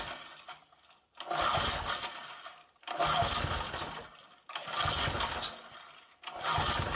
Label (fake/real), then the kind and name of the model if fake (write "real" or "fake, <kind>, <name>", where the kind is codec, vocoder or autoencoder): real